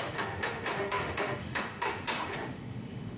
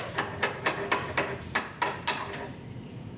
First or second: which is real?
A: second